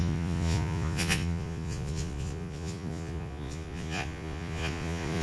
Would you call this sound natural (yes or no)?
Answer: no